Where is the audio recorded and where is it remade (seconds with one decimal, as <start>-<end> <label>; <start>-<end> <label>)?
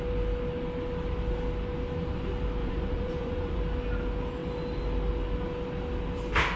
0.0-2.6 recorded; 2.6-3.6 remade; 3.6-6.6 recorded